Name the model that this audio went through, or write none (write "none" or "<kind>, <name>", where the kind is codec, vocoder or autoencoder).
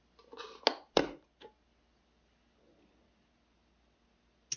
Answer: none